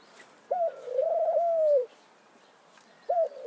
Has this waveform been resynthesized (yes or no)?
yes